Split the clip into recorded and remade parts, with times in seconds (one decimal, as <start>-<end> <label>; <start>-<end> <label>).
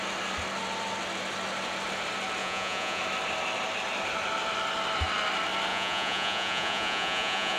0.0-2.4 recorded; 2.4-3.0 remade; 3.0-5.7 recorded; 5.7-7.6 remade